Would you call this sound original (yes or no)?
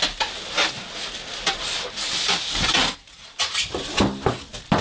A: yes